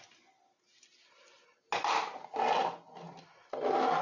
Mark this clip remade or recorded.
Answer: recorded